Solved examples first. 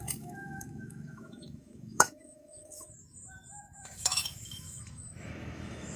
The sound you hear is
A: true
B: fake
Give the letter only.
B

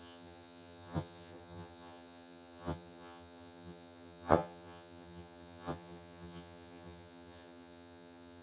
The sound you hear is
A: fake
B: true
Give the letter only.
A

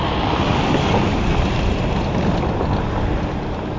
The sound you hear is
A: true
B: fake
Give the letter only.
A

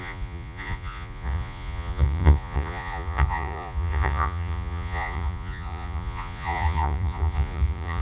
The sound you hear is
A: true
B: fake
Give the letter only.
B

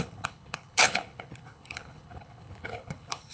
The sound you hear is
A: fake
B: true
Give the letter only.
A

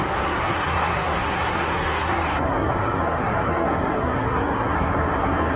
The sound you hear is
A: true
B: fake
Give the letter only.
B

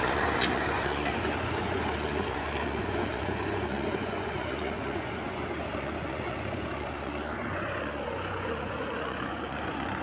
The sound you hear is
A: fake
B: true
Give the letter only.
A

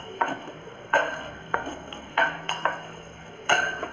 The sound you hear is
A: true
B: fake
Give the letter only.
B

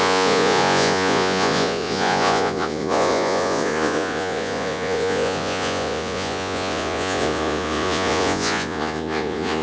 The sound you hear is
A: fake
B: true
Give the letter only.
A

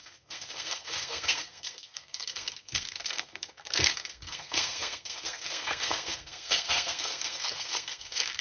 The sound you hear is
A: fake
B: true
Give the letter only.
A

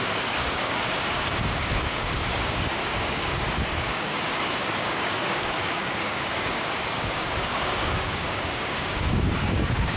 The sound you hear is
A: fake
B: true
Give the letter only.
A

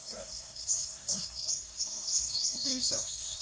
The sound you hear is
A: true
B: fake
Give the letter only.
B